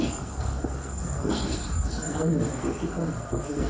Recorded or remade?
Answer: remade